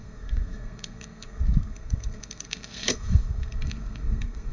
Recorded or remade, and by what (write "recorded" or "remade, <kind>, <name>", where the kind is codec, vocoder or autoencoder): remade, codec, SNAC